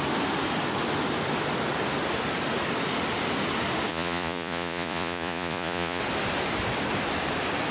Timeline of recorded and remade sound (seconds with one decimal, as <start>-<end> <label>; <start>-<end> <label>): 0.0-3.9 recorded; 3.9-6.0 remade; 6.0-7.7 recorded